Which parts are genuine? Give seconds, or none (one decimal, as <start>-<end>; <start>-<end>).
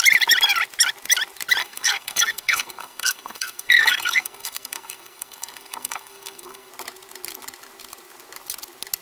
0.0-1.6; 6.7-9.0